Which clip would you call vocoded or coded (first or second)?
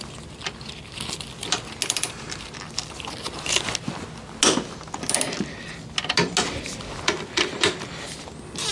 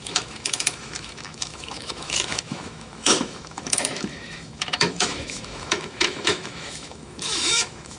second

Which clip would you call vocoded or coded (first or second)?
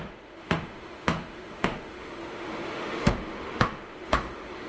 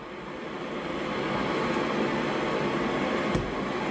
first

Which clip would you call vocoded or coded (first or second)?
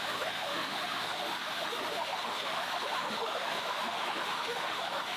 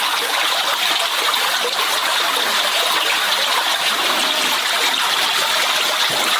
first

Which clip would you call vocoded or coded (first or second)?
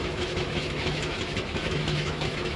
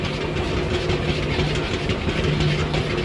first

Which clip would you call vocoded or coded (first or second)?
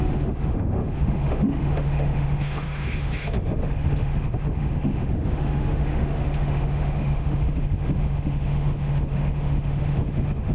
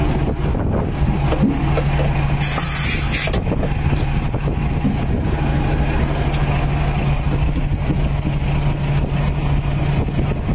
first